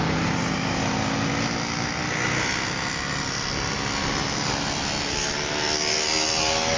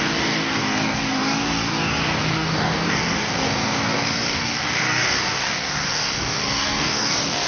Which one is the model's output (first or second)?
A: second